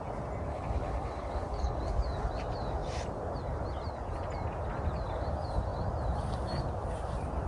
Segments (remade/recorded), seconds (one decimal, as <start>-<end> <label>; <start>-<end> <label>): 0.0-0.5 recorded; 0.5-1.8 remade; 1.8-7.5 recorded